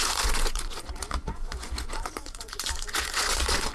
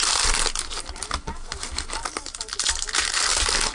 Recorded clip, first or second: second